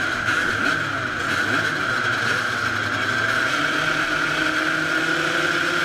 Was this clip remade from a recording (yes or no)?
no